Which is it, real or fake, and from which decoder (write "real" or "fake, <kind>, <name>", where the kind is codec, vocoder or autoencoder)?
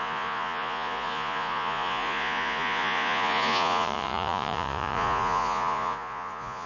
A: fake, vocoder, Vocos